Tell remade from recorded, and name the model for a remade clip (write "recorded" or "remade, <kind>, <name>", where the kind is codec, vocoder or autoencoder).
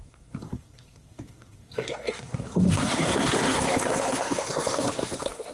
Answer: remade, codec, SNAC